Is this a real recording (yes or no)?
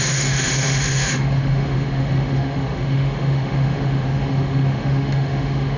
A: no